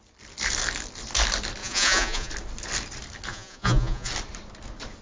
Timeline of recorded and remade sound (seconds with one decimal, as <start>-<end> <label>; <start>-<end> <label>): 0.0-1.6 recorded; 1.6-2.3 remade; 2.3-3.3 recorded; 3.3-4.1 remade; 4.1-5.0 recorded